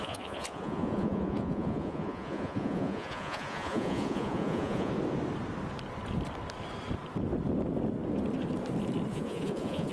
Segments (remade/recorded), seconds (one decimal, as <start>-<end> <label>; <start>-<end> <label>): 0.0-4.9 remade; 4.9-9.1 recorded; 9.1-9.9 remade